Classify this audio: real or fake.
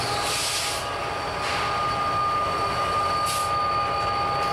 real